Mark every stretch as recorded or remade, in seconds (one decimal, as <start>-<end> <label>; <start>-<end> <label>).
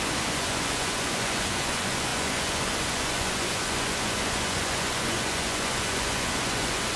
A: 0.0-7.0 remade